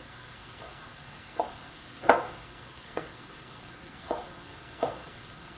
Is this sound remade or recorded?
remade